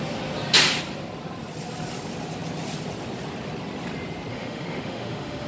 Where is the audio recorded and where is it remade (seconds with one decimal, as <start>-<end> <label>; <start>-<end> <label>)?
0.0-4.3 recorded; 4.3-5.5 remade